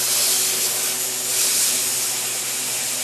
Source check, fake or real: real